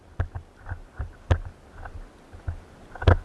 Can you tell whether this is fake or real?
real